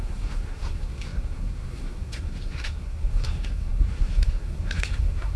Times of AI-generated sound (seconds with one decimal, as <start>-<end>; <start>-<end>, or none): 0.0-5.4